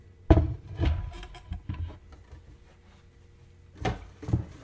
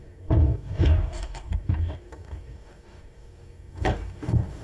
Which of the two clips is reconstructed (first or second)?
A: second